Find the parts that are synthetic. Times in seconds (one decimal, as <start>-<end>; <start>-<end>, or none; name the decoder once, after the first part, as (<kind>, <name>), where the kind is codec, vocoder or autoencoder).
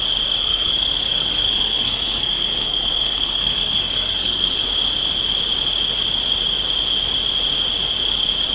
0.4-4.6 (codec, SNAC)